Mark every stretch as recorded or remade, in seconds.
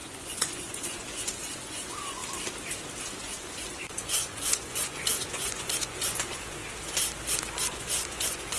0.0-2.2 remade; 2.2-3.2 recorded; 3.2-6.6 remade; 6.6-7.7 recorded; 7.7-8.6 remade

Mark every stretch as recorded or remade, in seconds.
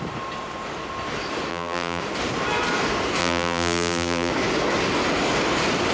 0.0-1.5 recorded; 1.5-2.0 remade; 2.0-3.2 recorded; 3.2-4.3 remade; 4.3-5.9 recorded